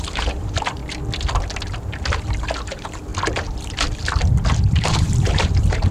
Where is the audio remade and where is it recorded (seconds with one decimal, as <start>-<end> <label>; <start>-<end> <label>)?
0.0-0.8 remade; 0.8-2.2 recorded; 2.2-3.1 remade; 3.1-4.6 recorded; 4.6-5.9 remade